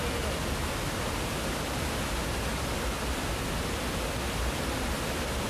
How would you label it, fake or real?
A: real